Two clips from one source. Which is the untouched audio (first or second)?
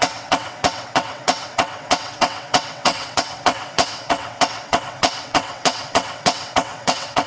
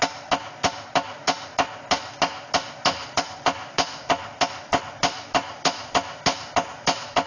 second